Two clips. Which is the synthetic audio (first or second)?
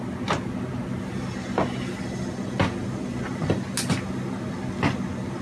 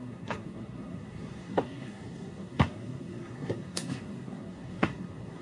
second